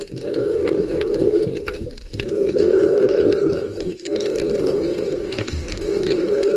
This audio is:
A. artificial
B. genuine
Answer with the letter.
A